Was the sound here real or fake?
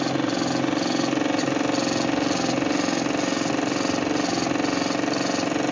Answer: real